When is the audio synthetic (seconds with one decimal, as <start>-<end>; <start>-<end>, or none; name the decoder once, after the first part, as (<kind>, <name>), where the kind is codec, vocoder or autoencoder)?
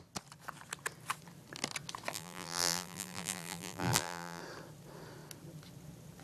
2.1-4.4 (vocoder, BigVGAN v2)